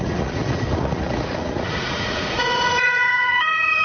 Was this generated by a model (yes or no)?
yes